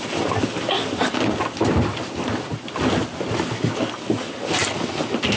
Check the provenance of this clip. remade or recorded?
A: recorded